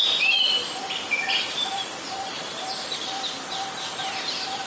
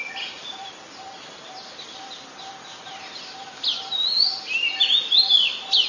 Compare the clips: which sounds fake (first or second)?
first